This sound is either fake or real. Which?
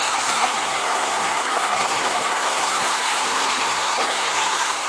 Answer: fake